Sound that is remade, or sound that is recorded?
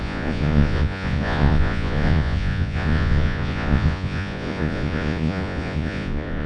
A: remade